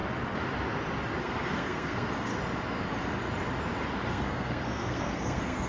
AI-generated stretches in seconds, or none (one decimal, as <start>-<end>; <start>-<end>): 1.2-2.3; 4.1-5.7